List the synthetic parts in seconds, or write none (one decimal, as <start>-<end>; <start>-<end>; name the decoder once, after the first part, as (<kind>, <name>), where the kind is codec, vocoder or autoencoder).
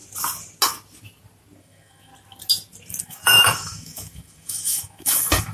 1.6-2.1 (autoencoder, DAC-VAE); 3.0-5.5